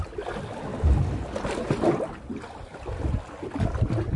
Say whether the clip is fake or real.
real